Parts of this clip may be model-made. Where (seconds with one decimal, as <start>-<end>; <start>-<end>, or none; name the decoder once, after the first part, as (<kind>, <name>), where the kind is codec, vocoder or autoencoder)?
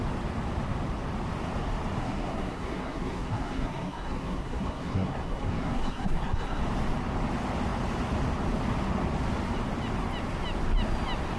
2.0-6.6 (codec, SNAC)